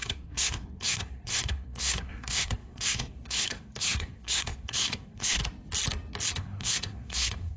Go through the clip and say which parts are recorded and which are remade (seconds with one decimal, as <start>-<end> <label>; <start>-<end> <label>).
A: 0.0-5.4 remade; 5.4-6.3 recorded; 6.3-7.6 remade